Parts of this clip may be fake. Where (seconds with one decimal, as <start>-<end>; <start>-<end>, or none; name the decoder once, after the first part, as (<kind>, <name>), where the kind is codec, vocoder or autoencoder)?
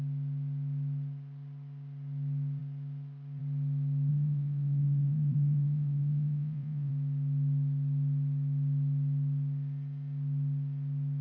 4.1-6.9 (vocoder, Vocos)